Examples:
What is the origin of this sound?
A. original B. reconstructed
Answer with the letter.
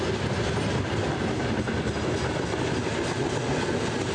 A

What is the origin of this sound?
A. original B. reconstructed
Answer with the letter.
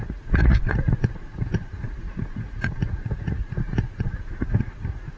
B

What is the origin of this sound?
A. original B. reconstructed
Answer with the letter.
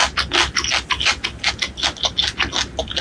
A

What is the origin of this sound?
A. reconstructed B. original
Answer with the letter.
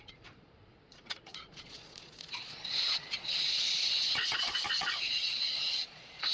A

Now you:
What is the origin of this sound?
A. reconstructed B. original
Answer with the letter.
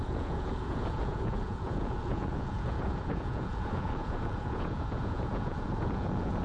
A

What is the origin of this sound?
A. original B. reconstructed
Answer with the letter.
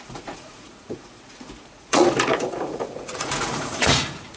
B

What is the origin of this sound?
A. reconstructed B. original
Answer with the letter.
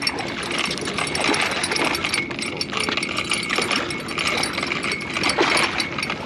B